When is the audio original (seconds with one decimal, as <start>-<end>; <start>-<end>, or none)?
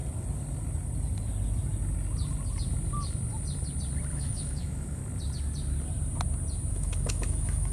0.0-4.1; 5.0-6.7